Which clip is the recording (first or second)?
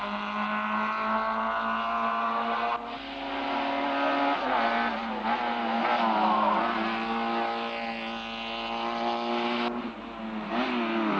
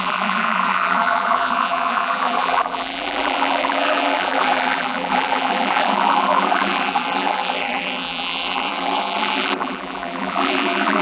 first